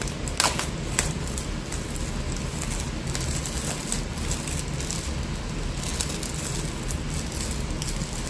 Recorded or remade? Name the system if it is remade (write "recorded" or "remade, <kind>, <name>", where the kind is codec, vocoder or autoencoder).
recorded